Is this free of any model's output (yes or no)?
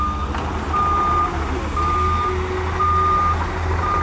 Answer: yes